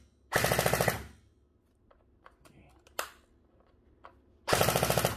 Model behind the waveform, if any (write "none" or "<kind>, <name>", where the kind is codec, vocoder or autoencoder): none